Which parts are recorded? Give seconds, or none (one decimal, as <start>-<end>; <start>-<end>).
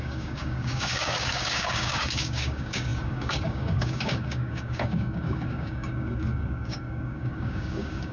none